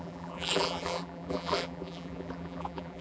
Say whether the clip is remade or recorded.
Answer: remade